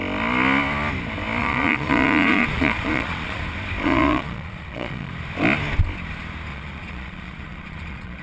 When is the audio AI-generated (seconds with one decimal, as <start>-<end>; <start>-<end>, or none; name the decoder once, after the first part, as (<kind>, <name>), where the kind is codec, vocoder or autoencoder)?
1.4-3.4 (vocoder, Vocos); 3.8-5.1; 6.5-8.2